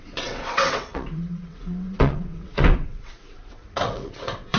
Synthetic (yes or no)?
yes